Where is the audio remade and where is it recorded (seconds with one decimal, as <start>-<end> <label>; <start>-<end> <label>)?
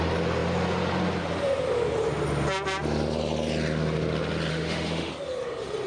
0.0-4.5 recorded; 4.5-5.1 remade; 5.1-5.9 recorded